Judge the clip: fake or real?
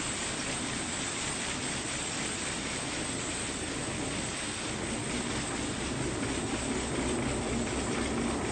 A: real